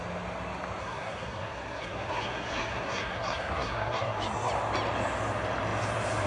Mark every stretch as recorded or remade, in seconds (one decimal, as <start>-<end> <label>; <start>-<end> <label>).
0.0-0.8 recorded; 0.8-4.5 remade; 4.5-6.3 recorded